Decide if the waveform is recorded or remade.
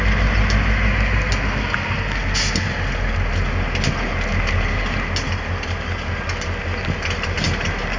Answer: recorded